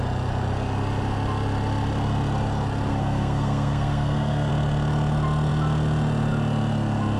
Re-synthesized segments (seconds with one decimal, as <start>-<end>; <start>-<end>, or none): 2.9-4.5